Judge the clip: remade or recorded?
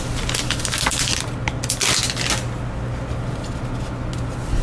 recorded